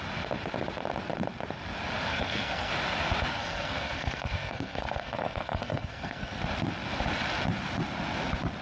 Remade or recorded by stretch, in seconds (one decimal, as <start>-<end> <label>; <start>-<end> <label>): 0.0-2.1 recorded; 2.1-2.7 remade; 2.7-3.3 recorded; 3.3-6.4 remade; 6.4-8.6 recorded